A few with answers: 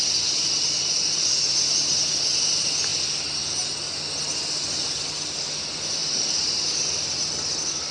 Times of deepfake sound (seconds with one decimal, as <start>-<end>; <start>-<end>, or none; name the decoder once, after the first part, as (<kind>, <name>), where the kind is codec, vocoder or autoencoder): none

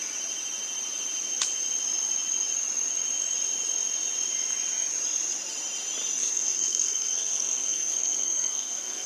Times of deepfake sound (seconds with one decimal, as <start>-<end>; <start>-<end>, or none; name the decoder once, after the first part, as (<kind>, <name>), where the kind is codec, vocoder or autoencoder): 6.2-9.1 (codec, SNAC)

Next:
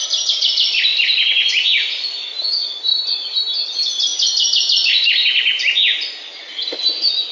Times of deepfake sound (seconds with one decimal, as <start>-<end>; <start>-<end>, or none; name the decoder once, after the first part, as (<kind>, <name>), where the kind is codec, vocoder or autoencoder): none

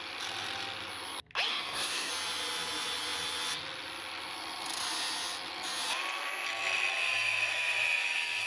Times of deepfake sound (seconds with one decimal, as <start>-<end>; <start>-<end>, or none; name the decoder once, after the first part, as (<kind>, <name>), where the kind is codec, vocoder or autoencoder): 1.5-2.1 (codec, SNAC)

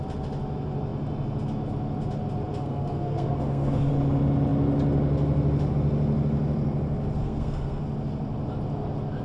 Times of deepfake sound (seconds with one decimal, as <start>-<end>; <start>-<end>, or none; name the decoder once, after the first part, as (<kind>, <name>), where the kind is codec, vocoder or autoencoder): 2.6-3.9 (codec, SNAC); 7.2-7.8